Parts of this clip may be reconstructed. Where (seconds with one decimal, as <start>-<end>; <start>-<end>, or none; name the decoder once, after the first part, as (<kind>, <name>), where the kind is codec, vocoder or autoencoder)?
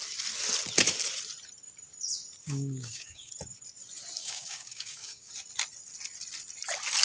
2.4-3.3 (codec, DAC); 4.2-5.3